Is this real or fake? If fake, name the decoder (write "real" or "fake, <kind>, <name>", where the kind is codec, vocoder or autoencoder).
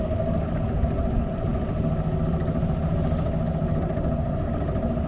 real